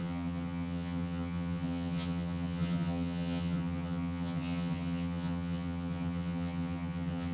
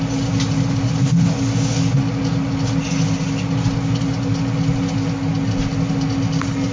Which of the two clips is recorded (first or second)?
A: second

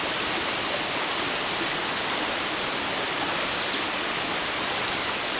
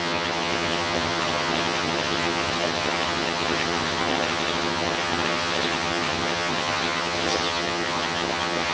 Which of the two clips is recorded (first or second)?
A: first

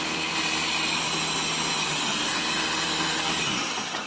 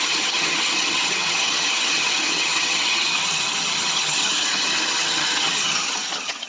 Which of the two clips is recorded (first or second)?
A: first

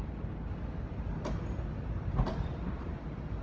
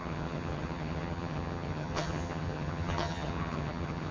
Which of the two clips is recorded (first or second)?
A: first